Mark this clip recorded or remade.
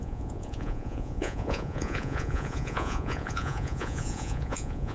remade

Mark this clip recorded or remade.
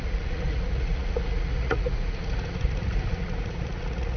remade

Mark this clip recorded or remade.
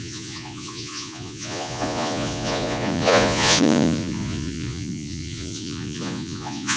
remade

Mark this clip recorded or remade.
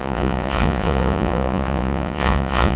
remade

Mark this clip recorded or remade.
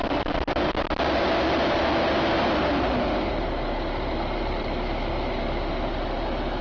recorded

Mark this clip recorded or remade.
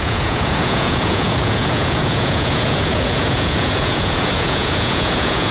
remade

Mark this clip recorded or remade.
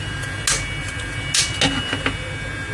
recorded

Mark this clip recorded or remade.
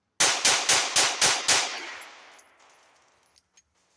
recorded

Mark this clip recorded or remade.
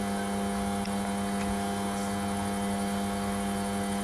recorded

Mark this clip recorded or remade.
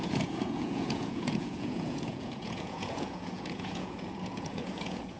remade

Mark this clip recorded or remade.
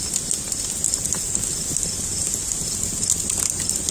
recorded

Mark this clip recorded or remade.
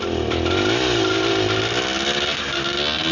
recorded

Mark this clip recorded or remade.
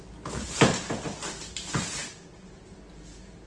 recorded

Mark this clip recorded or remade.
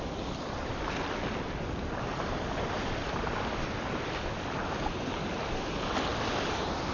recorded